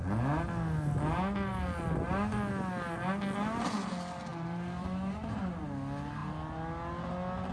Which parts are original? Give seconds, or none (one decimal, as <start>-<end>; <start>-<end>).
0.0-4.3; 5.4-7.5

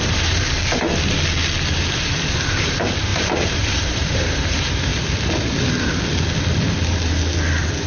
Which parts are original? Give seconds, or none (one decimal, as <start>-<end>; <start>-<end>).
0.6-1.8; 4.9-7.9

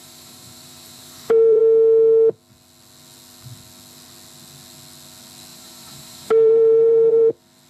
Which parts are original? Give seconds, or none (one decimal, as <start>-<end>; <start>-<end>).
1.6-5.5; 7.3-7.7

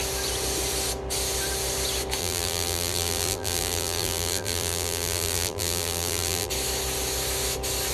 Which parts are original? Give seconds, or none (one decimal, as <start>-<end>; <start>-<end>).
0.0-2.2; 6.5-7.9

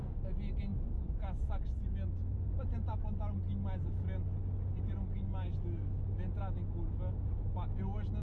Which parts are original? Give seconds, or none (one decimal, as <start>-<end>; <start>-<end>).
0.0-2.3; 2.9-8.2

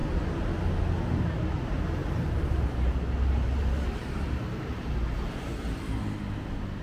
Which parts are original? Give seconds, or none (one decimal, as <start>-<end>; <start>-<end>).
0.0-2.0; 5.6-6.8

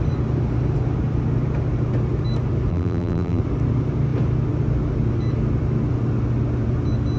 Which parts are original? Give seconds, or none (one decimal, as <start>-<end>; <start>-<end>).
0.0-2.7; 3.4-7.2

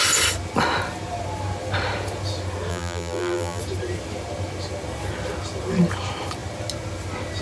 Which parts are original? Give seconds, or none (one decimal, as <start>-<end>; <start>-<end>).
0.0-2.7; 3.6-7.4